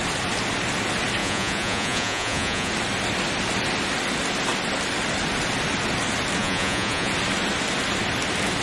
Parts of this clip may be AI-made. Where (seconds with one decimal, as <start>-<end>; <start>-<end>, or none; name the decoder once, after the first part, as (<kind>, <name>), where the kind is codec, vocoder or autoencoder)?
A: 1.2-2.7 (vocoder, Vocos); 6.4-7.1